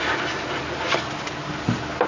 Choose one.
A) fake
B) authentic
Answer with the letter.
B